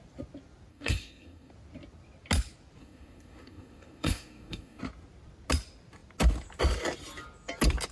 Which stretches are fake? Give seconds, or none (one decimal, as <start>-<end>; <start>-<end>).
0.7-1.5; 2.8-4.8